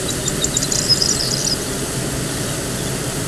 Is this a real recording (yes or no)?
yes